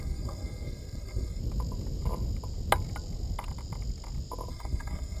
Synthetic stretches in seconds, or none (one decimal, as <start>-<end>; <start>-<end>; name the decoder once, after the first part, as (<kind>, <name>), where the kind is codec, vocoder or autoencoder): 0.0-1.4 (codec, SNAC); 4.5-5.2